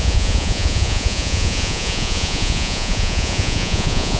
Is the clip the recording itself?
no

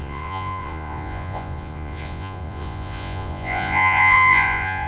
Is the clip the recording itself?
no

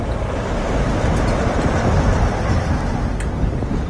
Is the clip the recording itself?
yes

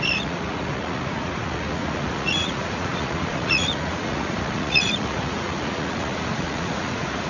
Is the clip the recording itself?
no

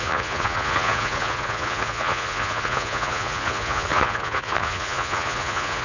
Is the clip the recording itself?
no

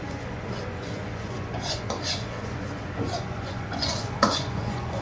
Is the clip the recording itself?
no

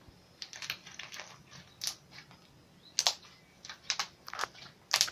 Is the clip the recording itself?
yes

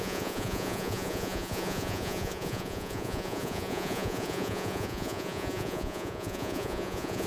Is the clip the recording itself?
no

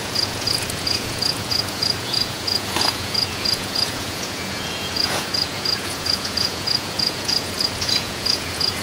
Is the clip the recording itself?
no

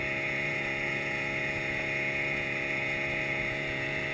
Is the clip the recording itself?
no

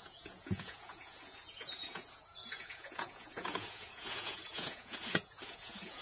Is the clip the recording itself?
no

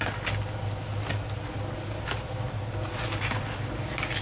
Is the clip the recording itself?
yes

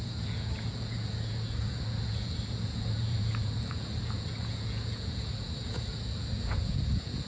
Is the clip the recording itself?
no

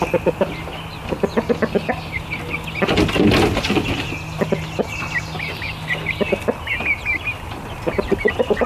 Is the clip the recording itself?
yes